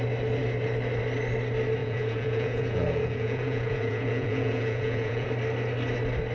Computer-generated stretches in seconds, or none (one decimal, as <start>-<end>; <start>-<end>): 1.8-5.3